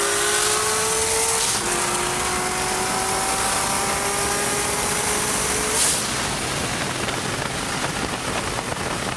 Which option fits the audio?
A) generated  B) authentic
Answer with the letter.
B